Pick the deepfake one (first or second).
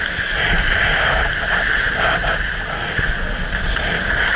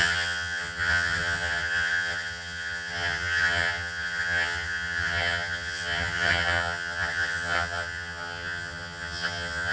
second